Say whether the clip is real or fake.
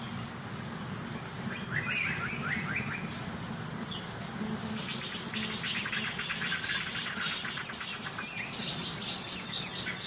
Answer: real